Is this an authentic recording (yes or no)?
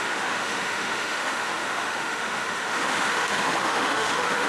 no